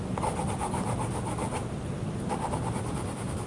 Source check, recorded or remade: recorded